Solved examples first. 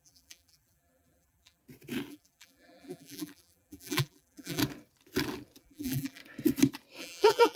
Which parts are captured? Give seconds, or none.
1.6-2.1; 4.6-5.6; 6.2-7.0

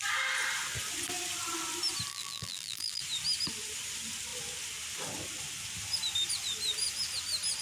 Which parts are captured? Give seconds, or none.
0.0-2.1; 3.0-7.6

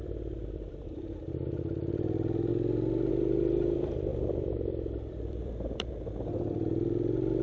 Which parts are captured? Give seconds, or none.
2.5-3.1

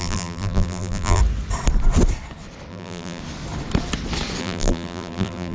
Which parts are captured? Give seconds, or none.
1.2-2.7; 3.2-4.4